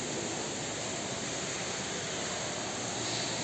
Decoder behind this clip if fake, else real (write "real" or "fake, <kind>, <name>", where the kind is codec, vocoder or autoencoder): real